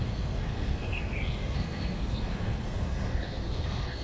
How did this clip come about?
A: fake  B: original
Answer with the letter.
A